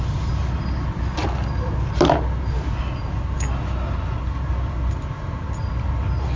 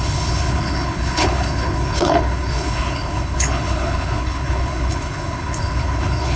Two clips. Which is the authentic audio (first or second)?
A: first